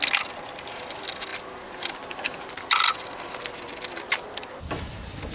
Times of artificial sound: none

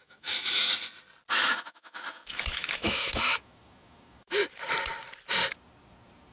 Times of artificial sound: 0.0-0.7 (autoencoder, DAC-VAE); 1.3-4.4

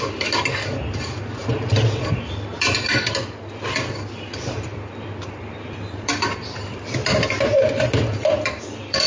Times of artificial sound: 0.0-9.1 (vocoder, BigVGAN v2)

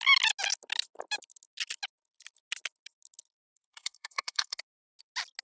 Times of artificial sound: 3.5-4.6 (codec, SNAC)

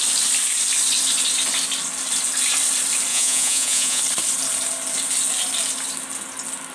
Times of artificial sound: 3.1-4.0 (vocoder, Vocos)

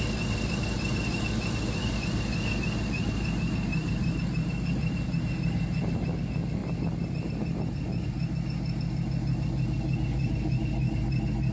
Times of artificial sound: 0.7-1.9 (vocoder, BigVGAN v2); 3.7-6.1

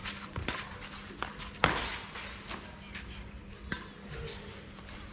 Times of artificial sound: none

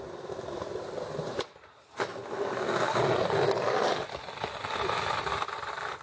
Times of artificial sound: none